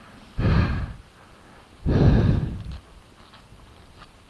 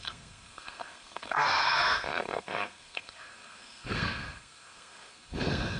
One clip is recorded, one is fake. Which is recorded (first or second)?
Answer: first